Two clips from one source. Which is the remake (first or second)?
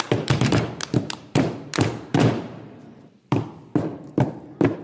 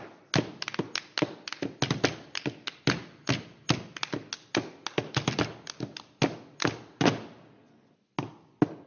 first